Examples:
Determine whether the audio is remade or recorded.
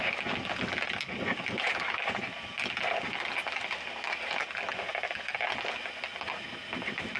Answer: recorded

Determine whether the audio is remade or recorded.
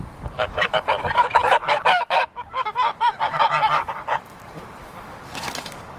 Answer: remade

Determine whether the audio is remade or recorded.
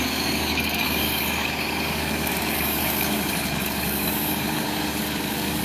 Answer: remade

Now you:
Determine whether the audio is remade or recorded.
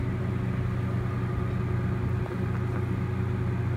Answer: recorded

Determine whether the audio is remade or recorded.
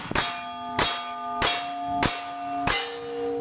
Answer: recorded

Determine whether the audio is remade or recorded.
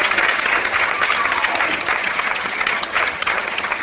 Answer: remade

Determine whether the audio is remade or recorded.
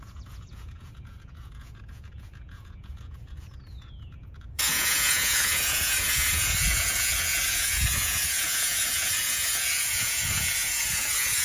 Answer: remade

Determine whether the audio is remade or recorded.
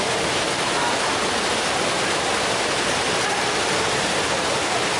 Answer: recorded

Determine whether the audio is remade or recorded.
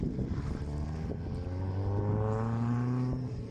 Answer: recorded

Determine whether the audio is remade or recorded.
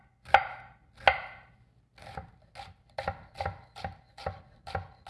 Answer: recorded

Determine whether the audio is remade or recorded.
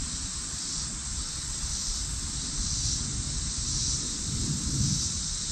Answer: recorded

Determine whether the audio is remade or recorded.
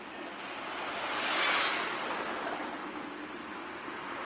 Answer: recorded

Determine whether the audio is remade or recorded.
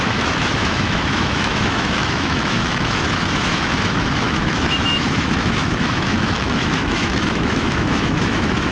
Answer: remade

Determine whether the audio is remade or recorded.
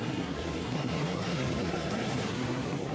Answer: remade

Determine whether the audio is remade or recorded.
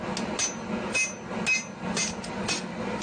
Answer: recorded